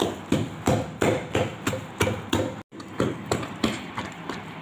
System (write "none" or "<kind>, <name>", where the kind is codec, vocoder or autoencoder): none